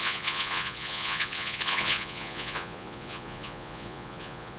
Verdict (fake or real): fake